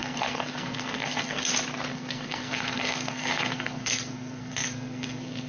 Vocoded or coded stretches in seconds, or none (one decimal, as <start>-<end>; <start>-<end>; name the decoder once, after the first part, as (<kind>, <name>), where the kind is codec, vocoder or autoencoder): 0.0-1.5 (codec, SNAC); 1.9-5.5